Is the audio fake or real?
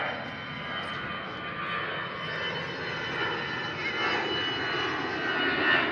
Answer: real